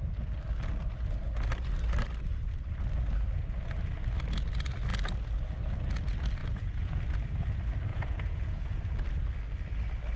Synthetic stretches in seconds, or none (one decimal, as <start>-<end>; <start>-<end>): 6.4-7.0; 7.9-8.8